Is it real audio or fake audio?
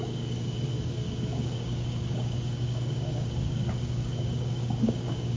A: fake